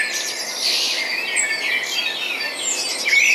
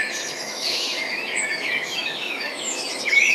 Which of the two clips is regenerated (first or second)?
second